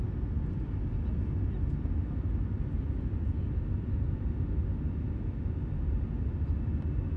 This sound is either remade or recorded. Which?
recorded